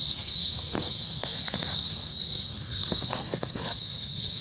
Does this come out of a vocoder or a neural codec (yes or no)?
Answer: yes